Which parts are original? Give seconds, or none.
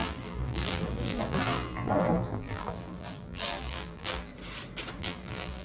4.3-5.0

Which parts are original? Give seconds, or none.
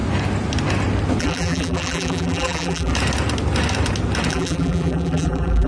0.0-1.2; 2.9-4.3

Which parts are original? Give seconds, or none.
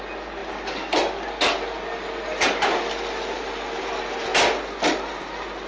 0.0-5.7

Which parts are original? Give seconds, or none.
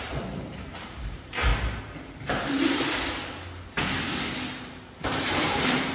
1.5-5.0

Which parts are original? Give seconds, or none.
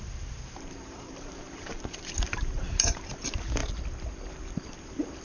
3.1-5.2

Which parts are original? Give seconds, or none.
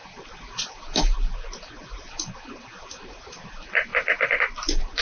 0.0-3.0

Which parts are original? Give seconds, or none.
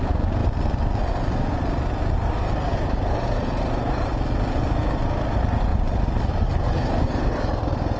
0.0-2.7; 4.1-5.7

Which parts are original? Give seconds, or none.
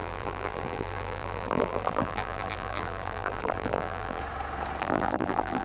4.2-4.8